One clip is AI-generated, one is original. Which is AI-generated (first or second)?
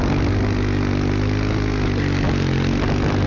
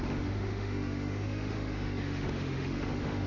second